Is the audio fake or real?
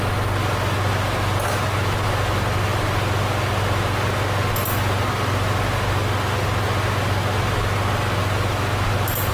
real